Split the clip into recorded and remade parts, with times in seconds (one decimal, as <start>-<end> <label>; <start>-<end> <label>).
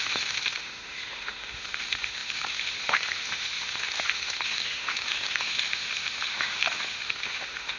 0.0-7.8 remade